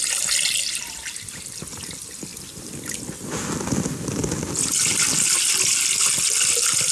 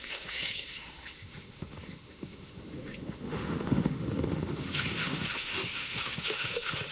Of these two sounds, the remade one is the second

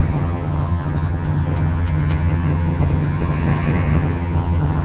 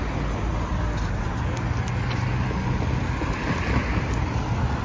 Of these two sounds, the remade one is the first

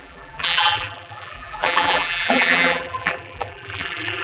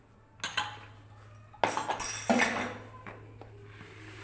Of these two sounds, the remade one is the first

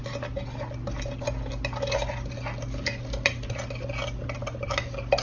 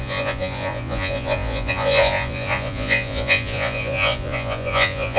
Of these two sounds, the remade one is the second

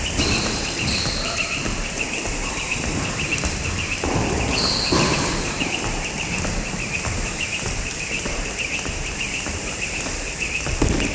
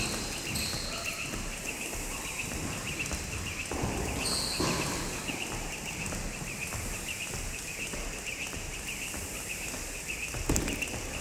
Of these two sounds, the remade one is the first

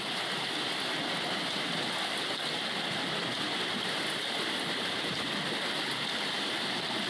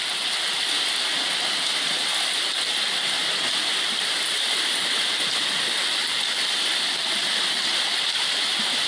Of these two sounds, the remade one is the second